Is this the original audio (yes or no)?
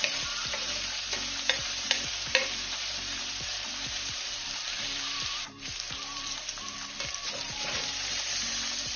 no